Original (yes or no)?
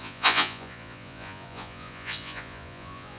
no